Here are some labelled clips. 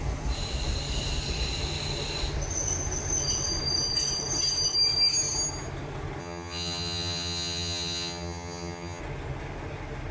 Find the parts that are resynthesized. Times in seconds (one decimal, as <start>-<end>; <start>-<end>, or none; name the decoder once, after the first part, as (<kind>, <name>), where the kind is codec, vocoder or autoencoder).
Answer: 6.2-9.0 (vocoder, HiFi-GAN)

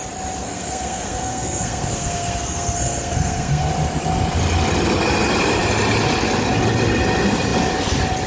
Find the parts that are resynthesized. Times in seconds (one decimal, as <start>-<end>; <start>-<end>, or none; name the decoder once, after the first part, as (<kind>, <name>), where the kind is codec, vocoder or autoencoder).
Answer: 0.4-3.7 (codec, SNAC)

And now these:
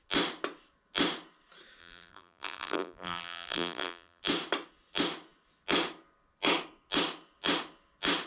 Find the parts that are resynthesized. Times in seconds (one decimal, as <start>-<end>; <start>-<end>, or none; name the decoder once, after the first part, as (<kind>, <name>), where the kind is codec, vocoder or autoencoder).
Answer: 1.8-4.2 (vocoder, BigVGAN v2)

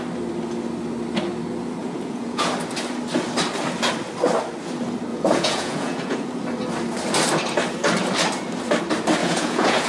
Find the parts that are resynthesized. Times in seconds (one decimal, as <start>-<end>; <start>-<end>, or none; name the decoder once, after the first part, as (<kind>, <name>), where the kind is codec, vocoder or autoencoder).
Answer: 1.8-2.5 (vocoder, Vocos); 5.1-6.3; 9.2-9.9

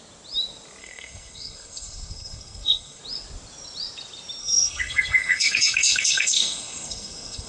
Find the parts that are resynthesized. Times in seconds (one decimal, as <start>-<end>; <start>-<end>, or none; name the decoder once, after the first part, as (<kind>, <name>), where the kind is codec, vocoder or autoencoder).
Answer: 0.8-3.0 (codec, SNAC); 4.4-7.5

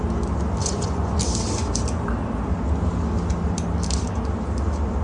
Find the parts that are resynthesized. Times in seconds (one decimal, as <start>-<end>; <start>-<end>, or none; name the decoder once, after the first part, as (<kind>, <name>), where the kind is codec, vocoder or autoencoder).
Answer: 0.6-1.2 (vocoder, Vocos)